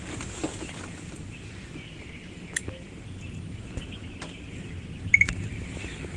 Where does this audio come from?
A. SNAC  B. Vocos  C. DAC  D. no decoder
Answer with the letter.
D